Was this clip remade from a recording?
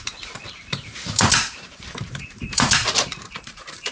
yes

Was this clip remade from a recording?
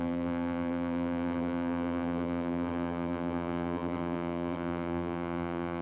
yes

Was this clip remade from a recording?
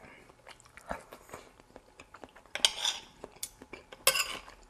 no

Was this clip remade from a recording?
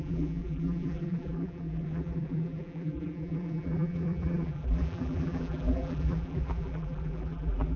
yes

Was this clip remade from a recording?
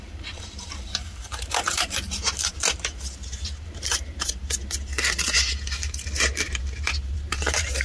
yes